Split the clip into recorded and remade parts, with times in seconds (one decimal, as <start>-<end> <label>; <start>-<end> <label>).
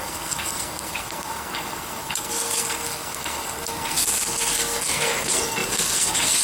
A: 0.0-6.4 remade